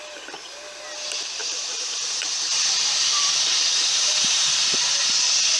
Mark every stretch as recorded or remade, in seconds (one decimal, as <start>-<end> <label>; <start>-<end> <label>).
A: 0.0-1.4 recorded; 1.4-4.8 remade; 4.8-5.6 recorded